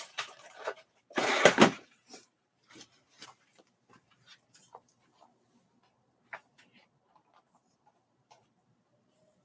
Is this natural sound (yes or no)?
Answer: no